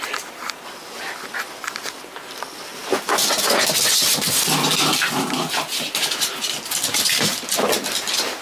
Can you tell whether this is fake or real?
real